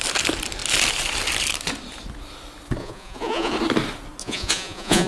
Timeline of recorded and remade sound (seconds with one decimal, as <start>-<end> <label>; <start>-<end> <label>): 0.0-2.8 recorded; 2.8-3.5 remade; 3.5-4.2 recorded; 4.2-5.1 remade